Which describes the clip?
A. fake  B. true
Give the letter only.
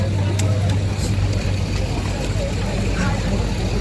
B